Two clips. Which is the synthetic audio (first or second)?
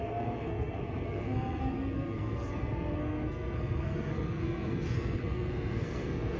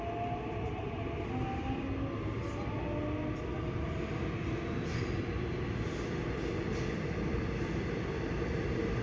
first